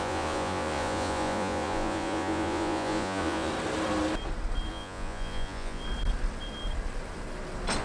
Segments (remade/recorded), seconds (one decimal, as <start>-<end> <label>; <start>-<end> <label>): 0.0-3.5 remade; 3.5-4.7 recorded; 4.7-5.8 remade; 5.8-7.8 recorded